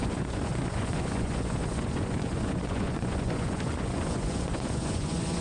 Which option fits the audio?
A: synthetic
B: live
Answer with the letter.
A